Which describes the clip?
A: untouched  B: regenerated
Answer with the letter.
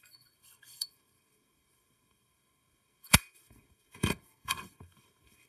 B